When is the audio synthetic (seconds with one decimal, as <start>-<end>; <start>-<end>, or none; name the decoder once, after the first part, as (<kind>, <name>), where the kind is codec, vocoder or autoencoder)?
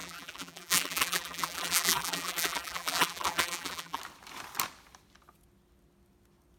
0.0-4.0 (vocoder, BigVGAN v2)